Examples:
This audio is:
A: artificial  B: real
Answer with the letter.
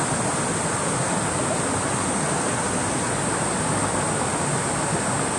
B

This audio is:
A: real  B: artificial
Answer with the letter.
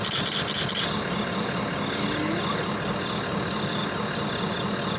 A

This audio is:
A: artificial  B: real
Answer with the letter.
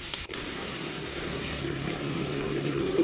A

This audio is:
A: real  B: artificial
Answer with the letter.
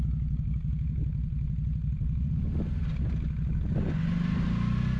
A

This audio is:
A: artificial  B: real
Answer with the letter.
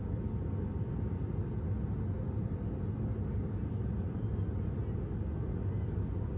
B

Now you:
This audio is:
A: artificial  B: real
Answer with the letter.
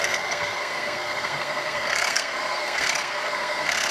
A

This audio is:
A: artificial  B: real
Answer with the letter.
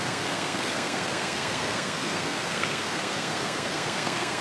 A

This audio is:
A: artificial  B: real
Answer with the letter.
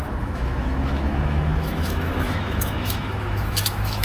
A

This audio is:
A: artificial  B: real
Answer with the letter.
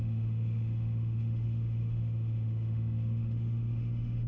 A